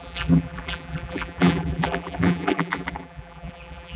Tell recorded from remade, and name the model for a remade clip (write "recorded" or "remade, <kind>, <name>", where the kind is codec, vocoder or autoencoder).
remade, vocoder, BigVGAN v2